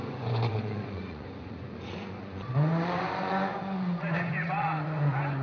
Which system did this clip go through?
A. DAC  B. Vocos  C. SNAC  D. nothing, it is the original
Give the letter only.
B